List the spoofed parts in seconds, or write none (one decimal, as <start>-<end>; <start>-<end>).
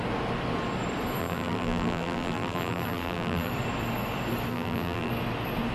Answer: 1.2-3.5; 4.5-5.1